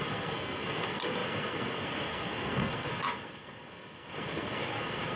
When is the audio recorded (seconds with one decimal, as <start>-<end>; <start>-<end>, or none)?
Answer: none